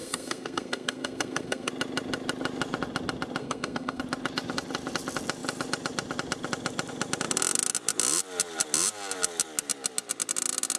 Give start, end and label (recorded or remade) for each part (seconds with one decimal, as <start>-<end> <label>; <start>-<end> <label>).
0.0-1.7 remade; 1.7-3.4 recorded; 3.4-4.0 remade; 4.0-10.8 recorded